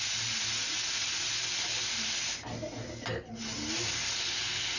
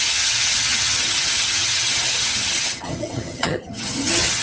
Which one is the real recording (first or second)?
first